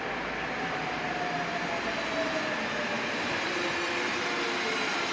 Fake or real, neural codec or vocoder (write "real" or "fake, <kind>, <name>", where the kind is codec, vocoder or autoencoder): real